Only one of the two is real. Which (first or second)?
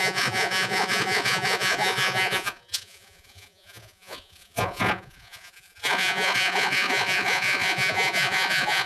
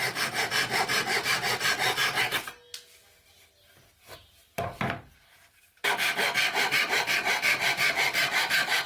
second